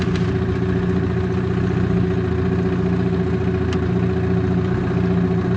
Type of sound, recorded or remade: recorded